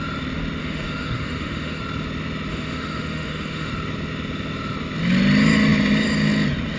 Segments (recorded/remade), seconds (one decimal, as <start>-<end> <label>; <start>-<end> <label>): 0.0-0.6 recorded; 0.6-1.8 remade; 1.8-2.5 recorded; 2.5-3.7 remade; 3.7-6.8 recorded